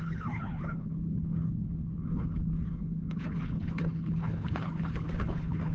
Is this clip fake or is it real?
fake